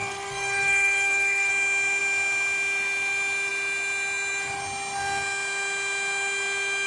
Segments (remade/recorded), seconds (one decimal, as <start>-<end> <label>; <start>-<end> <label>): 0.0-1.5 remade; 1.5-6.9 recorded